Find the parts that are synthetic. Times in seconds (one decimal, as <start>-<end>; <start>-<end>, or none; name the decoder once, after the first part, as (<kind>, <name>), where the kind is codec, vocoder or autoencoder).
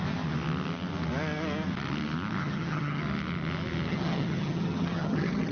2.4-3.0 (vocoder, HiFi-GAN); 3.9-5.5